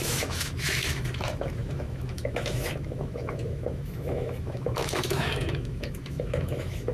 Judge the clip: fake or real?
fake